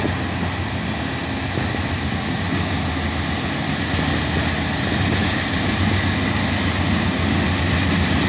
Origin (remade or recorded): recorded